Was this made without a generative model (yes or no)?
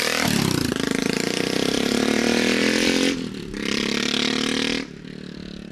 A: no